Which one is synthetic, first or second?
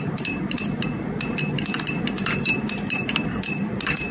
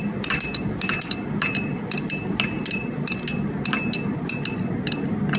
first